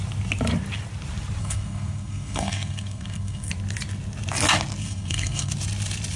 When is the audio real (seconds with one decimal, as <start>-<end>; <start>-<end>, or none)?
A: 0.0-1.4; 3.5-4.8; 5.5-6.2